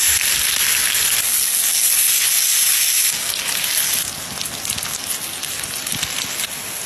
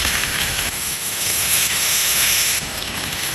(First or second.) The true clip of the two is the first